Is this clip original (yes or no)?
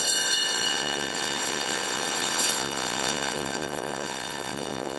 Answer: no